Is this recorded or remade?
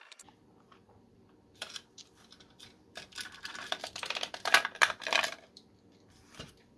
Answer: remade